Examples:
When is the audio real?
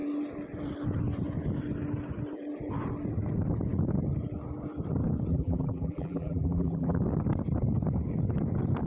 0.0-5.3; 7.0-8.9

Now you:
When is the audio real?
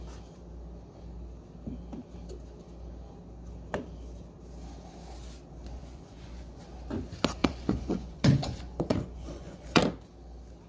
0.0-5.8; 6.6-7.4; 9.8-10.7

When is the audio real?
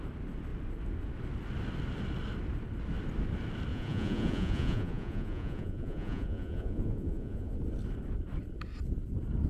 0.0-3.7; 7.5-9.5